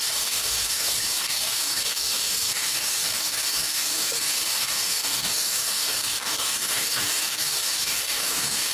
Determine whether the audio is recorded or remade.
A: remade